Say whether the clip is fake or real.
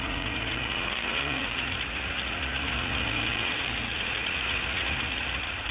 fake